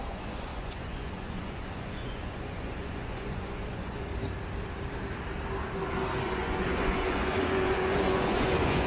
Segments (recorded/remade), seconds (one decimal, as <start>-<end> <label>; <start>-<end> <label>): 0.0-4.1 remade; 4.1-6.2 recorded; 6.2-8.9 remade